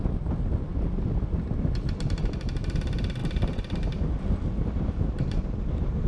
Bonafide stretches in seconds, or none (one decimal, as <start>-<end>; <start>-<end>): 0.0-6.1

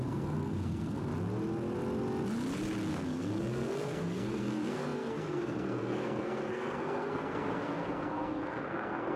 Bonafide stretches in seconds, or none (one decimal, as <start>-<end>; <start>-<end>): 1.1-2.9

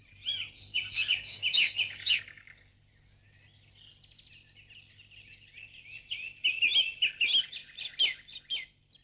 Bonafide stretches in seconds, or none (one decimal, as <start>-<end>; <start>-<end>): 0.0-0.7; 2.7-9.0

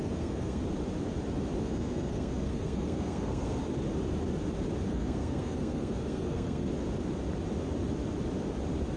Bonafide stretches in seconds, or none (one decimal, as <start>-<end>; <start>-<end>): 0.6-1.6; 3.6-4.9; 6.7-9.0